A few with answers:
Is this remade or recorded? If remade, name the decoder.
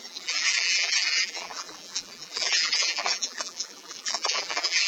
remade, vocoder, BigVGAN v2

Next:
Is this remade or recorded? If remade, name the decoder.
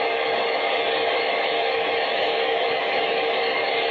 remade, codec, DAC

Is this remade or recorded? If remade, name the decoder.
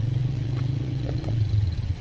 remade, vocoder, WaveNeXt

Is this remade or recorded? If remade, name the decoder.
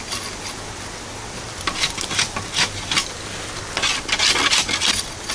recorded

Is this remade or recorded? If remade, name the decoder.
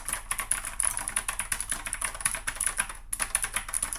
recorded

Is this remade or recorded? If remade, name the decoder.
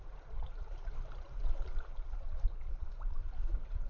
remade, vocoder, BigVGAN v2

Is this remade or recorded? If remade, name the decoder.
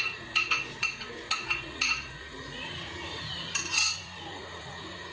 remade, vocoder, Vocos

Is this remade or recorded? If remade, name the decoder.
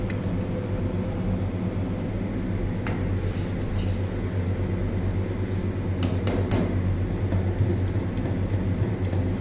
recorded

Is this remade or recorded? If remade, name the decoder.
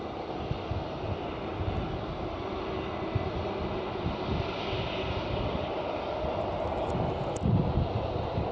recorded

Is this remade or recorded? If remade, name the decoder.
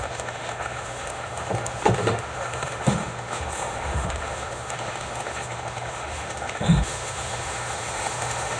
remade, autoencoder, DAC-VAE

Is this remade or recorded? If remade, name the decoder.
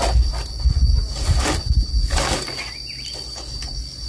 recorded